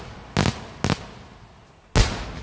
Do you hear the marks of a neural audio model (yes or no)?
no